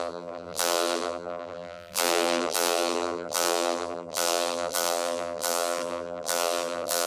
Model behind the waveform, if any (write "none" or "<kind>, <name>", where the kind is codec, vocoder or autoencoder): vocoder, BigVGAN v2